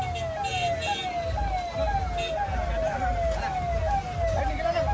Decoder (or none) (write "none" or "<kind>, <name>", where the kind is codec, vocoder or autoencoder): none